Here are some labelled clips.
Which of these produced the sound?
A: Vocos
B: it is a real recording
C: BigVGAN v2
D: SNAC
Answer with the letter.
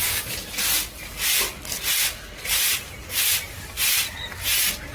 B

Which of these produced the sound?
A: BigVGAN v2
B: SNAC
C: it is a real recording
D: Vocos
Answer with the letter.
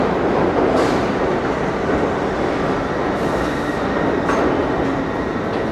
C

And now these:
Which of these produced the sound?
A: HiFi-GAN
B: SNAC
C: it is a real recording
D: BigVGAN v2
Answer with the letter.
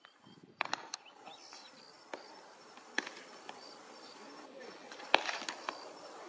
C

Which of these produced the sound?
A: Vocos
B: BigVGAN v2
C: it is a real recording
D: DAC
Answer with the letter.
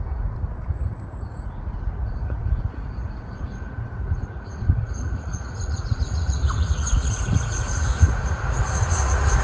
A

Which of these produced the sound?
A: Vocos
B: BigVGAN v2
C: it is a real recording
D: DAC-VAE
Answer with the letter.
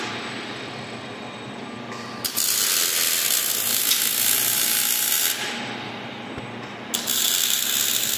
C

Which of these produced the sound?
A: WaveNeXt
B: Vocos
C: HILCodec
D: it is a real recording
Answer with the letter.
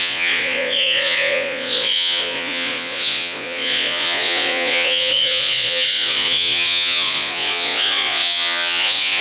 B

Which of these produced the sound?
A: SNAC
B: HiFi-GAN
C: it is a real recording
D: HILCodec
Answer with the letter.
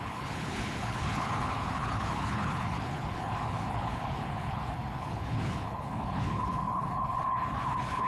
D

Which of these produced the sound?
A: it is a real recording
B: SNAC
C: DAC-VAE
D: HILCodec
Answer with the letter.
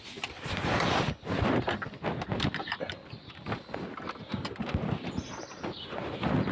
A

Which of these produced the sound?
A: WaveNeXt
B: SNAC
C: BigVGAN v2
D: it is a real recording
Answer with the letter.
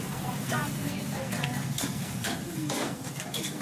B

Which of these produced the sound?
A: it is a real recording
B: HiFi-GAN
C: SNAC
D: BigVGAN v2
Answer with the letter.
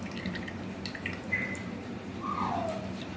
A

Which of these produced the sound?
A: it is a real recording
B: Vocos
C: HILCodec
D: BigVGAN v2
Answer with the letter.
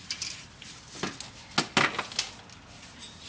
A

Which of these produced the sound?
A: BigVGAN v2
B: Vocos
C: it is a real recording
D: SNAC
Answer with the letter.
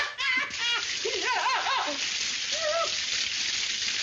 C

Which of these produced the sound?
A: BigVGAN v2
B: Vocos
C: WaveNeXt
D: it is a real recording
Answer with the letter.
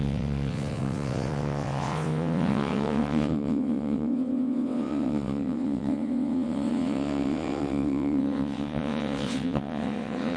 C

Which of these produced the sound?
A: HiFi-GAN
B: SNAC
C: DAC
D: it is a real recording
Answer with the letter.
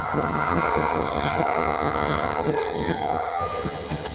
A